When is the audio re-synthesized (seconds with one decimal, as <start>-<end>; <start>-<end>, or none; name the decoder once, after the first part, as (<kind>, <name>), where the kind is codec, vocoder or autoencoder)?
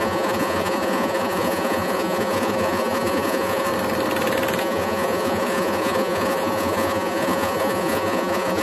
0.0-3.7 (vocoder, Vocos); 4.6-8.6